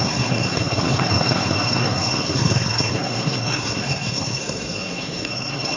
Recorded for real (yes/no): no